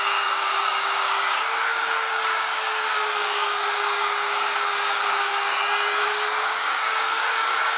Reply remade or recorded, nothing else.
remade